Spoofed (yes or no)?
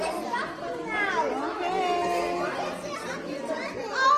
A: no